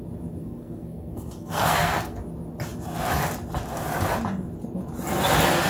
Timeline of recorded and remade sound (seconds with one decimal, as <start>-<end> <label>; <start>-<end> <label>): 0.0-0.4 recorded; 0.4-2.2 remade; 2.2-5.7 recorded